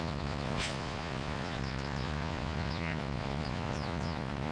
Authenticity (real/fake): fake